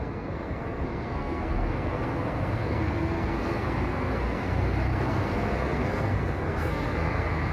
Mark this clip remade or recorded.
remade